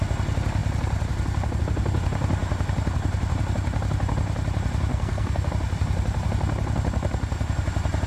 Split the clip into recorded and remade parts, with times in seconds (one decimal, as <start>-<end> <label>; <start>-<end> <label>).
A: 0.0-4.9 recorded; 4.9-5.5 remade; 5.5-8.1 recorded